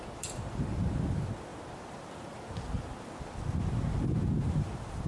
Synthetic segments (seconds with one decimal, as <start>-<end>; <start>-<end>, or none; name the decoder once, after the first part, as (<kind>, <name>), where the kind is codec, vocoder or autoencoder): none